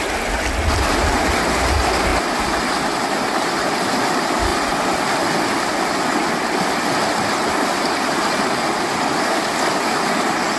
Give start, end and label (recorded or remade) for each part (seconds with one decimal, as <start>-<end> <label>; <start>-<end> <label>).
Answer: 0.0-10.6 recorded